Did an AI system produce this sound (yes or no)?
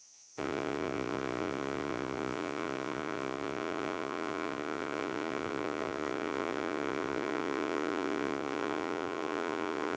yes